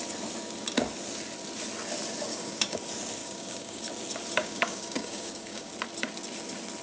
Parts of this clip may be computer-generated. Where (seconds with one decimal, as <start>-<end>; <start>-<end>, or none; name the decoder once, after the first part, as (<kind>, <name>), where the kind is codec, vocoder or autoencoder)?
2.3-2.8 (codec, DAC); 3.2-3.8; 4.4-5.7